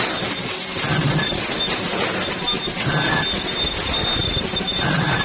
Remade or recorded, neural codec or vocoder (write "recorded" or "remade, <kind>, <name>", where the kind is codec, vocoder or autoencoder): recorded